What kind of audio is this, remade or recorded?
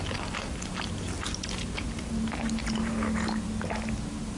recorded